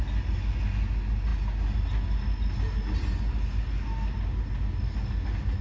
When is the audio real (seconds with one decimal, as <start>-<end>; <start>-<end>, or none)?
0.0-5.6